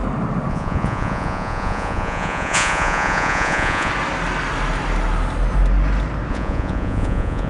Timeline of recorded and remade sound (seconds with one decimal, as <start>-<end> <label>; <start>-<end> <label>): 0.0-0.5 recorded; 0.5-3.9 remade; 3.9-6.3 recorded; 6.3-7.5 remade